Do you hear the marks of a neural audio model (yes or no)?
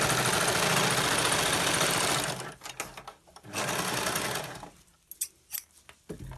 no